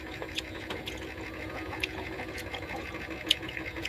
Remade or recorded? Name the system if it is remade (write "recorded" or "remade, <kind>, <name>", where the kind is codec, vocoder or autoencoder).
remade, vocoder, Vocos